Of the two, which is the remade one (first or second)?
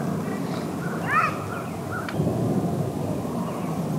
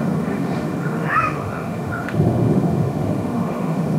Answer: second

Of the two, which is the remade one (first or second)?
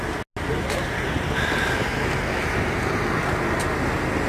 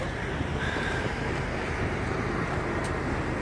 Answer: second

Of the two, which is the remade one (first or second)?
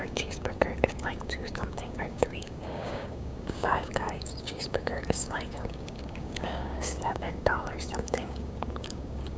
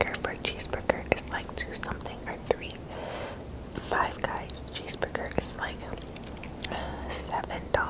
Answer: first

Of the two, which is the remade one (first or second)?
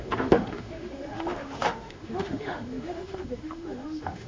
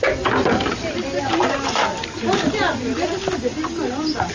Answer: first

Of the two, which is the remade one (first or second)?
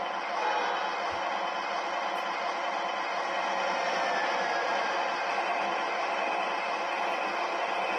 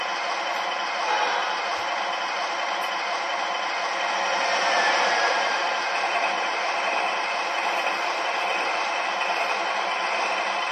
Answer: second